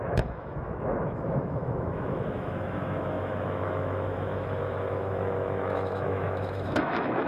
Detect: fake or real fake